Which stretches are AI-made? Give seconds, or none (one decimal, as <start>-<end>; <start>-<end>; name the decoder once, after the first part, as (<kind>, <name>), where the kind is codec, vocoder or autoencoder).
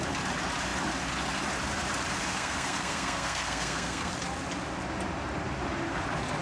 2.3-4.1 (codec, SNAC)